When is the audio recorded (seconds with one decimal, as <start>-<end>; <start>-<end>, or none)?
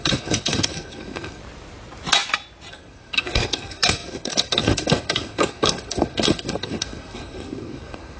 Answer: 1.4-2.7